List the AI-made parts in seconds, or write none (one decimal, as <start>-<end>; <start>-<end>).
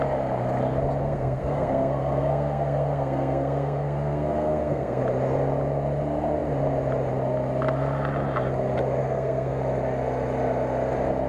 1.0-5.0; 9.0-9.6